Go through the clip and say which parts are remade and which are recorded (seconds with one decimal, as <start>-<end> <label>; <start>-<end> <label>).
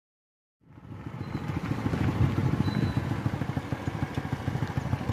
0.0-0.6 recorded; 0.6-1.7 remade; 1.7-5.1 recorded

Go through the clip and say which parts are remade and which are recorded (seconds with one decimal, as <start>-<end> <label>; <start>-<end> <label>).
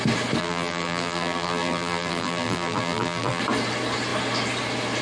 0.0-0.4 recorded; 0.4-3.4 remade; 3.4-5.0 recorded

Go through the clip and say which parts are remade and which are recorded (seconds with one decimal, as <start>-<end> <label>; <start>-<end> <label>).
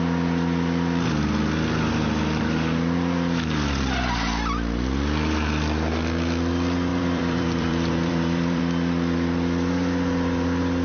0.0-6.9 recorded; 6.9-8.6 remade; 8.6-10.8 recorded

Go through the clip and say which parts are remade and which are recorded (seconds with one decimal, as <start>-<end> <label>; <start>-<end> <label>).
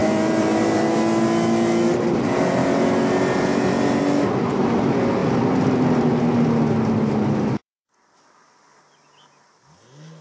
0.0-1.0 remade; 1.0-10.2 recorded